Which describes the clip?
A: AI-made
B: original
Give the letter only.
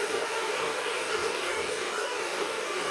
A